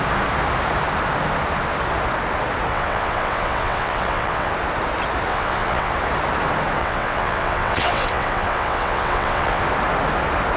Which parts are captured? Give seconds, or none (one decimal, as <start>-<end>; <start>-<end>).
0.0-2.7; 4.5-5.3; 5.9-6.8; 9.6-10.6